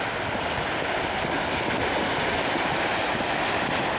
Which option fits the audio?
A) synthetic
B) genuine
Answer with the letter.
B